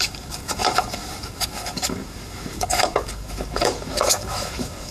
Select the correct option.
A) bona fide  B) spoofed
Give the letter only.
B